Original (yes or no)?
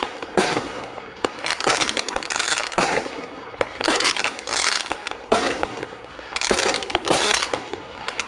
no